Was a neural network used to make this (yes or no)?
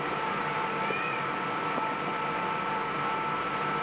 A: yes